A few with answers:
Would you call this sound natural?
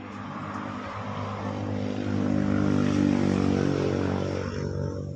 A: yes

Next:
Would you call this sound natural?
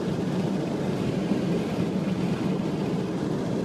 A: yes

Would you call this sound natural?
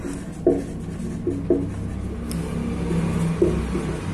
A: yes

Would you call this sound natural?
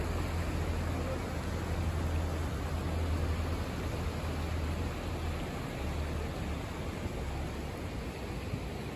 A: yes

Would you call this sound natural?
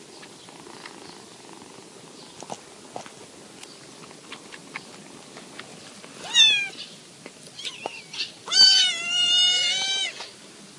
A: yes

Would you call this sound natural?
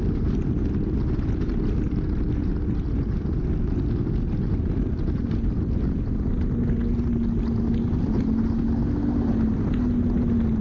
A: yes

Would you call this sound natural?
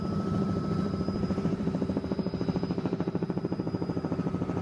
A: no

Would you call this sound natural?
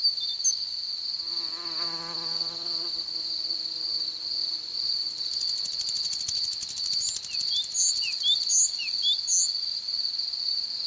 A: yes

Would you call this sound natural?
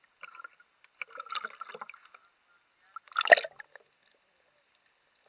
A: yes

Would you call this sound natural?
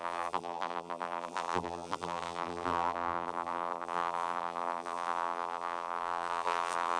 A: no